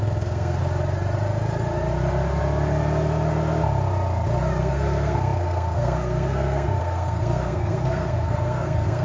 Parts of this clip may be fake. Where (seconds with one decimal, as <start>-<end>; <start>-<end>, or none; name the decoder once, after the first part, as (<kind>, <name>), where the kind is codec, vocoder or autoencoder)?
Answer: 0.0-0.6 (codec, SNAC); 4.6-9.0